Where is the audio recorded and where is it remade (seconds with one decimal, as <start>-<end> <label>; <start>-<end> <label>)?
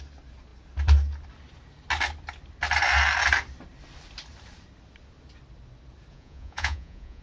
0.0-6.1 recorded; 6.1-7.2 remade